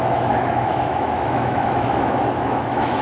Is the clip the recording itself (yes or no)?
no